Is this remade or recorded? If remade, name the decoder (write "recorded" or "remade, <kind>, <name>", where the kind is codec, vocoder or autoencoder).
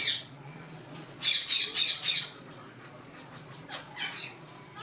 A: remade, vocoder, Vocos